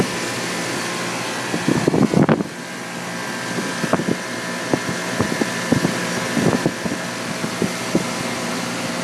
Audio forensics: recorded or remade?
recorded